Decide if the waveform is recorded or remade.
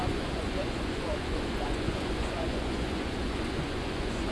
remade